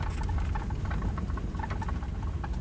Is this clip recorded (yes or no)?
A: yes